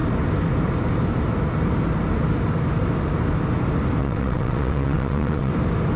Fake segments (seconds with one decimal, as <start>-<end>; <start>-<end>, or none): 4.0-5.5